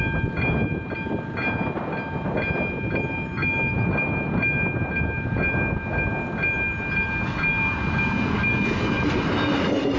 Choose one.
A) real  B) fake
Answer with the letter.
A